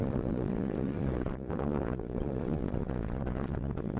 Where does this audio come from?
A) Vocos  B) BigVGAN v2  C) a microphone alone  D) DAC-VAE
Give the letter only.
A